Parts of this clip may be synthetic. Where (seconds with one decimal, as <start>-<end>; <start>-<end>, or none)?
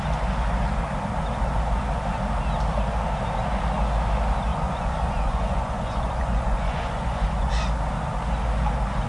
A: 4.5-7.5